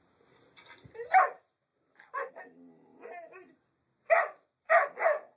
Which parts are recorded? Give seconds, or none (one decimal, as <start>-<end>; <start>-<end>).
0.0-5.4